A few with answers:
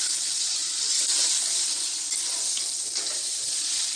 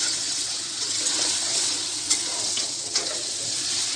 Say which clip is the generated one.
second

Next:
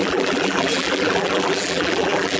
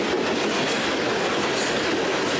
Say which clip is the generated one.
first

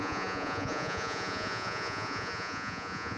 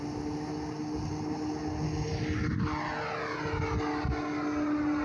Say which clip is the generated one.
first